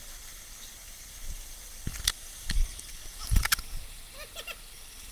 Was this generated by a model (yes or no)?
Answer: yes